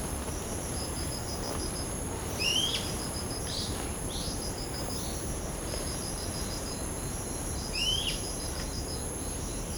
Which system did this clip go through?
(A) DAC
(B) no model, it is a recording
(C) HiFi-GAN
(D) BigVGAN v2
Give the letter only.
D